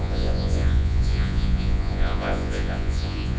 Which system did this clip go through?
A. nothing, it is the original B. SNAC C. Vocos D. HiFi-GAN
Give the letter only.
C